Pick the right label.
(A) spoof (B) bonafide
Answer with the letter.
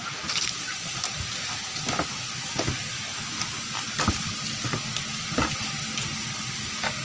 B